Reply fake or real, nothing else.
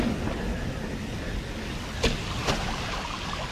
real